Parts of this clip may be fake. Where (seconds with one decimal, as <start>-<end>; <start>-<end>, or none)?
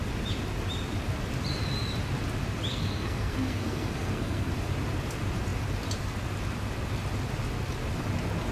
2.7-4.5